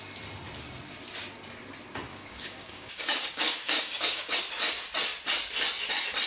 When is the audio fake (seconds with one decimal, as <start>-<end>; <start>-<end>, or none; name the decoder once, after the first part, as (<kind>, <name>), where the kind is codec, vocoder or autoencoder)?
2.1-4.4 (codec, DAC)